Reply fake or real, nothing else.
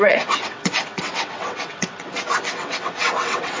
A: fake